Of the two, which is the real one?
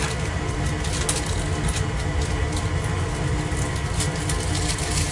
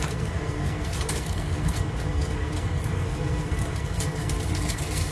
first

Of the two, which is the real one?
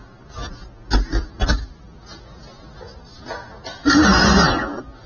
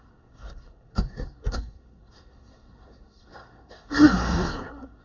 first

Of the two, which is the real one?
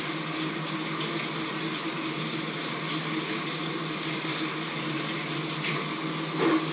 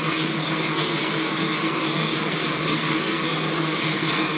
first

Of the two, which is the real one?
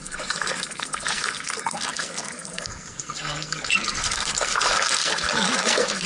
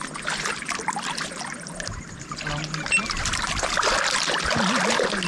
second